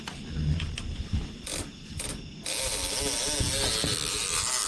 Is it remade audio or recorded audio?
recorded